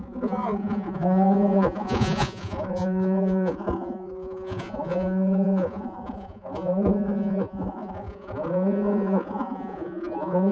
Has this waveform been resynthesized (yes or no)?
yes